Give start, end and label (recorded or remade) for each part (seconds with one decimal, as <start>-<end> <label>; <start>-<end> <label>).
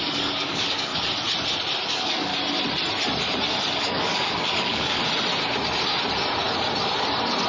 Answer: 0.0-0.9 remade; 0.9-1.9 recorded; 1.9-2.3 remade; 2.3-3.7 recorded; 3.7-5.0 remade; 5.0-7.5 recorded